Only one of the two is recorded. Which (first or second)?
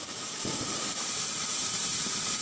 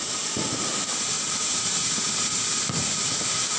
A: second